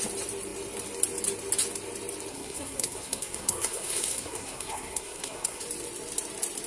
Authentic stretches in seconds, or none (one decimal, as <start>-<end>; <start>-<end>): 0.0-2.3; 5.6-6.7